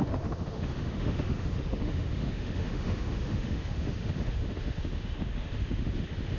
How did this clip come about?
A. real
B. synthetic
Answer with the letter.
B